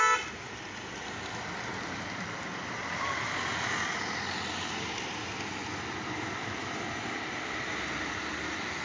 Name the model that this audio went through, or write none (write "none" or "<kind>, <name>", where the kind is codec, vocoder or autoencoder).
none